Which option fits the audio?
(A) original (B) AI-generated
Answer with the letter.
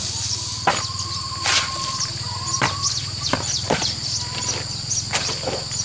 A